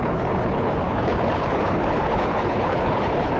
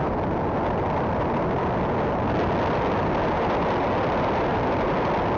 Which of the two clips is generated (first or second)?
first